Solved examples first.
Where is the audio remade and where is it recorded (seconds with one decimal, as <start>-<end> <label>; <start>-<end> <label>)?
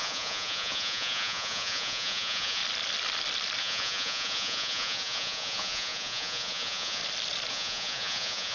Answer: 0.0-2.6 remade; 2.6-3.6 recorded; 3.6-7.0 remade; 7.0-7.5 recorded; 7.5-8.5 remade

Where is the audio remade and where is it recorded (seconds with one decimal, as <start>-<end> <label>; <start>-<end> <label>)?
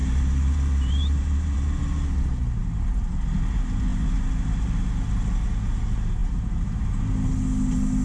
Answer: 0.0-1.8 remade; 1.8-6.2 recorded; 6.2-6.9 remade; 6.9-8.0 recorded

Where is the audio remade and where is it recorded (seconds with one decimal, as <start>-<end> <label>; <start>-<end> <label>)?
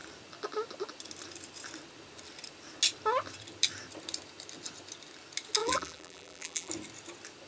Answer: 0.0-5.6 recorded; 5.6-6.7 remade; 6.7-7.5 recorded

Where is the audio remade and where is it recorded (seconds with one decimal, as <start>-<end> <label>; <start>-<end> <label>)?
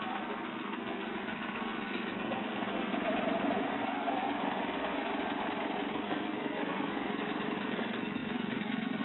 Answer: 0.0-2.9 remade; 2.9-3.7 recorded; 3.7-5.1 remade; 5.1-5.9 recorded; 5.9-7.1 remade; 7.1-7.6 recorded; 7.6-9.0 remade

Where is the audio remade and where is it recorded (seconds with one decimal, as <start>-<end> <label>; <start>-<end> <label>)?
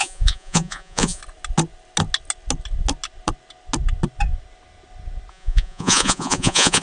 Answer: 0.0-1.2 remade; 1.2-5.3 recorded; 5.3-6.8 remade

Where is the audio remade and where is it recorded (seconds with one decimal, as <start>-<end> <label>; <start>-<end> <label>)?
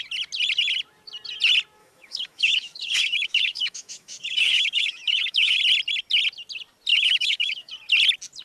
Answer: 0.0-1.8 recorded; 1.8-5.6 remade; 5.6-6.9 recorded; 6.9-7.7 remade; 7.7-8.4 recorded